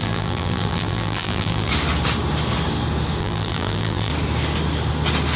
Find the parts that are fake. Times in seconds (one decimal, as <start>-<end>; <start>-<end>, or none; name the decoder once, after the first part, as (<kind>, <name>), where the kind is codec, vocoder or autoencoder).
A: 0.0-1.7 (vocoder, BigVGAN v2); 3.2-4.1